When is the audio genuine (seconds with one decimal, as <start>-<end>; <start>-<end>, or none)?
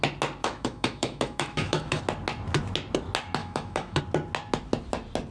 0.0-0.4; 2.0-3.4; 4.0-5.3